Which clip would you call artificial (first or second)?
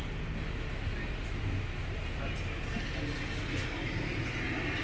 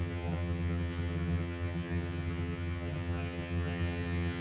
second